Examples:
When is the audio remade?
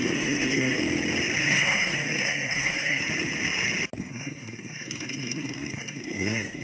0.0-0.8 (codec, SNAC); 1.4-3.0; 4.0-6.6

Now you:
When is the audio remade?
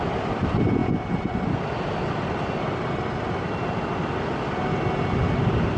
none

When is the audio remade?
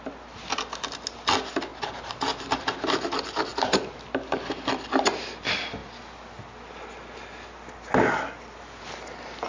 1.7-2.6 (vocoder, BigVGAN v2); 3.5-4.7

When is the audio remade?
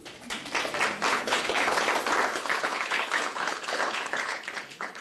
1.1-1.8 (codec, HILCodec); 2.3-5.0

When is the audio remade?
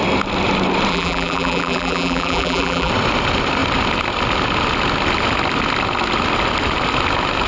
0.9-2.9 (vocoder, BigVGAN v2)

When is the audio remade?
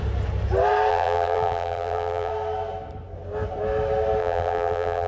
0.9-2.3 (vocoder, BigVGAN v2); 4.2-5.1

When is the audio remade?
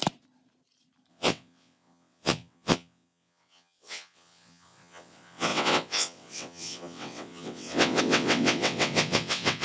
1.1-9.6 (vocoder, WaveNeXt)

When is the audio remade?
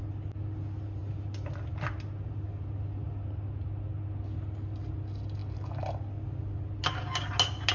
none